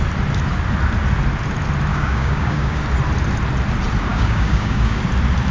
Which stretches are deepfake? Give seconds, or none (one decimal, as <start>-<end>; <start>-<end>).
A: 1.9-2.8; 4.1-5.0